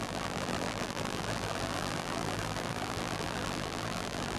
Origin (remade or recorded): remade